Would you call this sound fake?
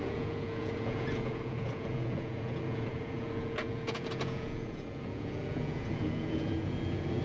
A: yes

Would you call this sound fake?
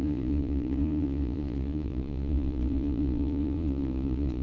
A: yes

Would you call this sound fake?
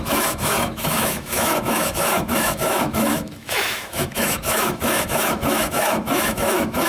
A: yes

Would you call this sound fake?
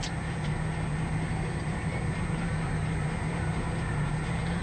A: no